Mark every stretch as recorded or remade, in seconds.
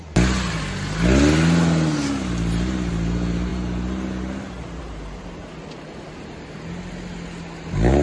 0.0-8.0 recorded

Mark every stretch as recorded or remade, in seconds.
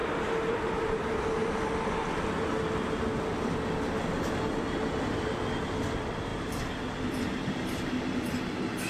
0.0-2.2 remade; 2.2-6.3 recorded; 6.3-7.5 remade; 7.5-8.9 recorded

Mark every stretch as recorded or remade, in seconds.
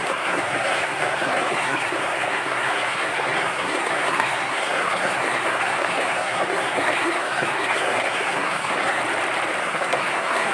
0.0-9.0 remade; 9.0-9.6 recorded; 9.6-10.5 remade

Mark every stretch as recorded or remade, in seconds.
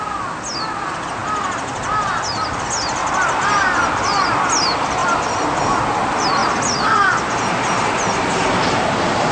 0.0-9.3 recorded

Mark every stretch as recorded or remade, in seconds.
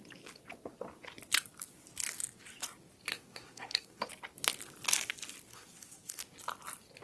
0.0-3.1 recorded; 3.1-4.1 remade; 4.1-5.5 recorded; 5.5-6.2 remade; 6.2-7.0 recorded